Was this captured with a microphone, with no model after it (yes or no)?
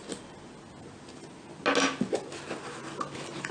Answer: yes